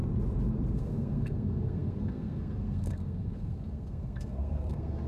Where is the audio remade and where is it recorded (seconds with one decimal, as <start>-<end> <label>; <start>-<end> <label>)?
0.0-0.7 recorded; 0.7-5.1 remade